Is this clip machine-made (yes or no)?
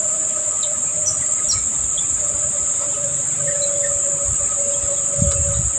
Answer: no